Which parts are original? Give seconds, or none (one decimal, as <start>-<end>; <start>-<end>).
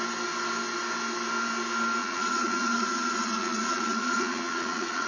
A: 0.0-2.0